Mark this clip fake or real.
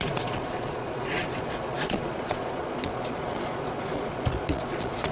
fake